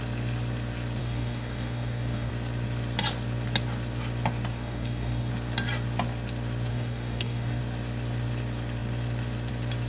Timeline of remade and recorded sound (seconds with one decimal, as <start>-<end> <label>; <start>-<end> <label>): 0.0-1.0 recorded; 1.0-2.3 remade; 2.3-4.5 recorded; 4.5-5.3 remade; 5.3-6.7 recorded; 6.7-7.6 remade; 7.6-9.9 recorded